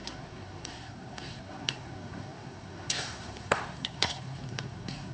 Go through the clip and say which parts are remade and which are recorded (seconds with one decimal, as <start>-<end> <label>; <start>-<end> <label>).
0.0-5.1 remade